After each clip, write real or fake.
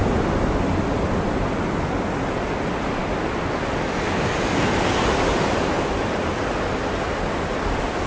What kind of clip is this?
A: real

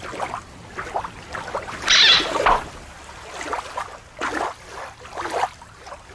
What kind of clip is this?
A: real